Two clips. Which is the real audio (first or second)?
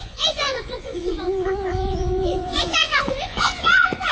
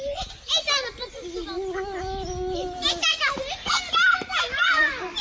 second